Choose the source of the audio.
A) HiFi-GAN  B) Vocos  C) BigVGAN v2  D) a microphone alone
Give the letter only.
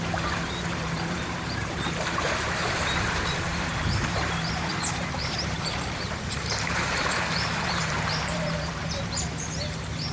C